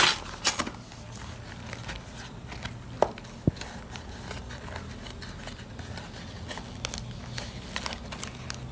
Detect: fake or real real